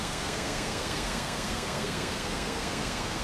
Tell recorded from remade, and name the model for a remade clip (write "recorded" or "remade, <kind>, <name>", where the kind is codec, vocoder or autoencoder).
remade, codec, SNAC